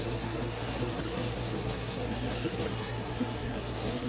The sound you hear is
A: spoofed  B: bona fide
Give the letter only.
A